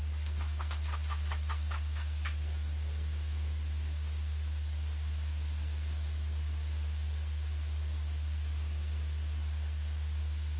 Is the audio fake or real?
fake